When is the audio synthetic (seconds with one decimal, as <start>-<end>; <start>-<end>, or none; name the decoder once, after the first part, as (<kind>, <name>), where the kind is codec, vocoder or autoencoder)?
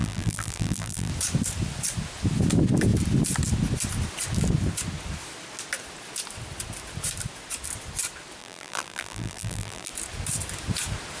0.0-1.1 (vocoder, BigVGAN v2); 8.4-9.9